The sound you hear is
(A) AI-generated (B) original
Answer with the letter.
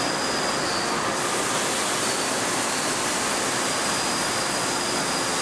B